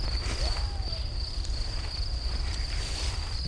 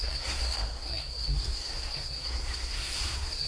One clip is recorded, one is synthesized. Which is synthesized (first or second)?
second